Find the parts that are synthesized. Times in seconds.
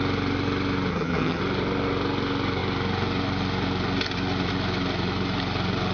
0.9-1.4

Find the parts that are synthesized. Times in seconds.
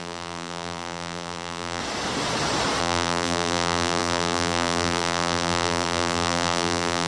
0.0-1.8; 2.8-7.1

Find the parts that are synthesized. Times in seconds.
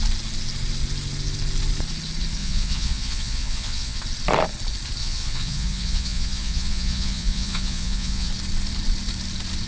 2.4-4.0; 5.0-8.3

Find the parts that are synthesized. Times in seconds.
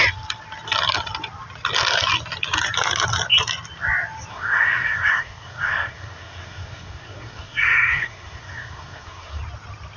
4.3-9.4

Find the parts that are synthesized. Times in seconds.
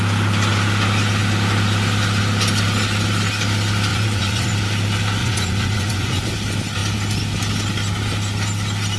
3.9-4.5; 5.2-6.3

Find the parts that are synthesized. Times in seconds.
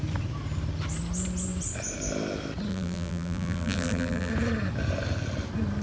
2.7-4.3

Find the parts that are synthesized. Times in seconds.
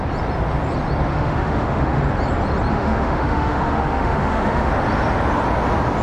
1.1-2.0; 2.7-4.7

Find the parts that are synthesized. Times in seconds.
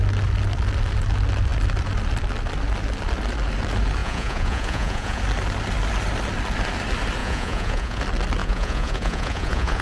4.0-5.2; 7.2-8.0; 8.4-9.8